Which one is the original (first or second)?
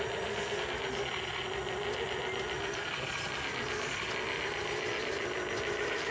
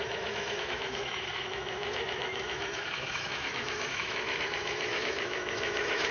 first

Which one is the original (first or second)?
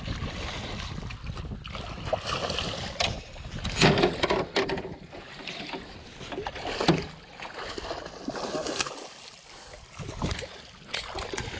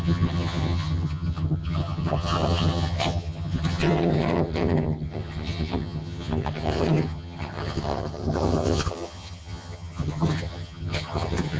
first